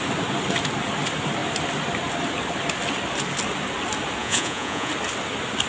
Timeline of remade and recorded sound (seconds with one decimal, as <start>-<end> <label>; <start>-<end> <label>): 0.0-4.2 recorded; 4.2-4.9 remade; 4.9-5.7 recorded